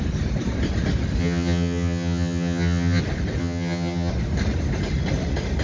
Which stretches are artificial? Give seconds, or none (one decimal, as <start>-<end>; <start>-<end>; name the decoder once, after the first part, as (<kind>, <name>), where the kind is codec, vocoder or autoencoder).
1.2-3.0 (vocoder, HiFi-GAN); 3.4-4.1